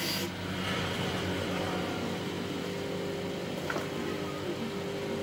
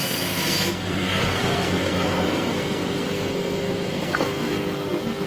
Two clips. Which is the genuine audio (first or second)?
first